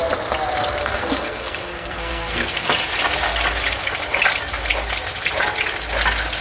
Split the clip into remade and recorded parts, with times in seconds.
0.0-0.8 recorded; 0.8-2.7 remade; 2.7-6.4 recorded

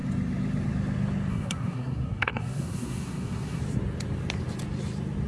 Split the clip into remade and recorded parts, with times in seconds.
0.0-1.3 recorded; 1.3-3.6 remade; 3.6-5.3 recorded

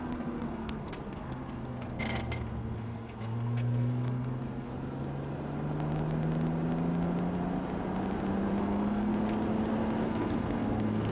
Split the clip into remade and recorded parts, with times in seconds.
0.0-4.7 remade; 4.7-8.6 recorded; 8.6-9.1 remade; 9.1-10.0 recorded; 10.0-11.1 remade

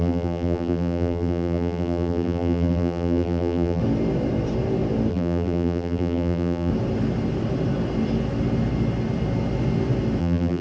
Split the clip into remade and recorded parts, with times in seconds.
0.0-3.8 remade; 3.8-5.1 recorded; 5.1-6.7 remade; 6.7-10.2 recorded; 10.2-10.6 remade

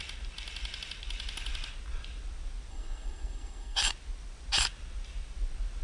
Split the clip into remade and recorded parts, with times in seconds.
0.0-2.7 recorded; 2.7-3.9 remade; 3.9-5.8 recorded

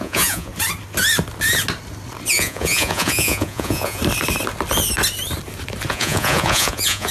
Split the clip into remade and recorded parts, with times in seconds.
0.0-0.5 remade; 0.5-2.3 recorded; 2.3-4.0 remade; 4.0-5.9 recorded; 5.9-7.1 remade